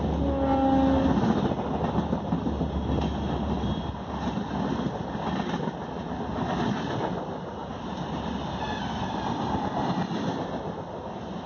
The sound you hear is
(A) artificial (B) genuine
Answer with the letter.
B